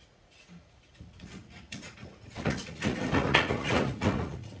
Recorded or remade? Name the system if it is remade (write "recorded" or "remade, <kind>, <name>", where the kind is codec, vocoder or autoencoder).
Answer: remade, vocoder, Vocos